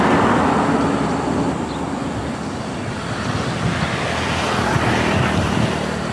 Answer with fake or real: real